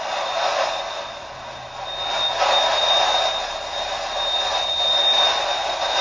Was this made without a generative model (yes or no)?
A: yes